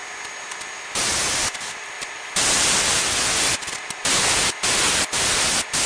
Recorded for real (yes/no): yes